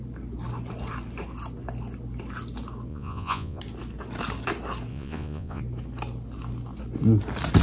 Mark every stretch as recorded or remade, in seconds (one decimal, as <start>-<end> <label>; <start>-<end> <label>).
0.0-2.9 recorded; 2.9-3.6 remade; 3.6-4.9 recorded; 4.9-5.6 remade; 5.6-7.6 recorded